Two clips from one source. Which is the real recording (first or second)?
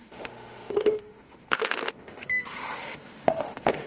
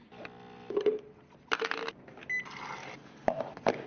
second